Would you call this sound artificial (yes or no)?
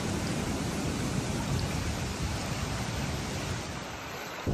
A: yes